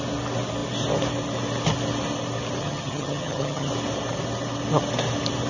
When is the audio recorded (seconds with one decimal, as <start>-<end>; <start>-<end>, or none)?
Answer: 0.0-2.6; 3.7-5.5

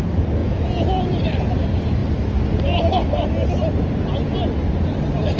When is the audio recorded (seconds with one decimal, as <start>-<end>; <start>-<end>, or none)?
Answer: 0.0-0.4; 1.2-5.4

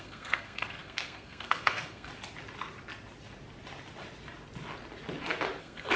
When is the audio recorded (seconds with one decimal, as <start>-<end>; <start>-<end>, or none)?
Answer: 2.1-5.6

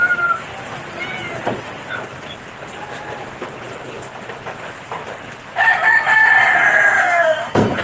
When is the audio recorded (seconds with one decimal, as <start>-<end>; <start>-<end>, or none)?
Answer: 0.0-7.0

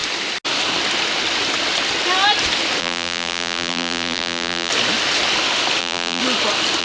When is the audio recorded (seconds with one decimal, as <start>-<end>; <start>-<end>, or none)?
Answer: 0.0-2.8; 4.7-5.8; 6.2-6.8

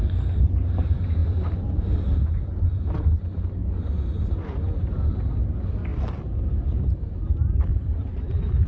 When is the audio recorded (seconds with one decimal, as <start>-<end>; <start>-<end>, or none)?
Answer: 0.0-8.7

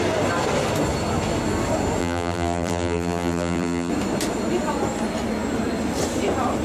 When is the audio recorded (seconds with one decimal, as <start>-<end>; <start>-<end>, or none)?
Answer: 0.0-2.0; 3.9-6.6

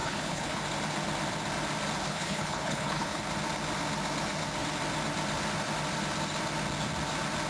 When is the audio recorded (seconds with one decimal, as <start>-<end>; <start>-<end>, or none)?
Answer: 0.6-2.1; 3.2-7.5